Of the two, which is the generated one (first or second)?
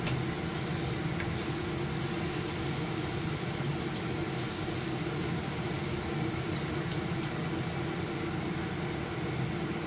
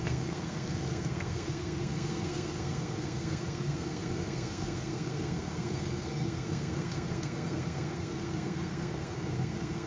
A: second